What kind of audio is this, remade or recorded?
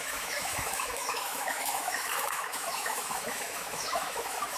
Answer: remade